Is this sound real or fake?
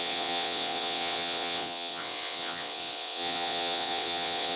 fake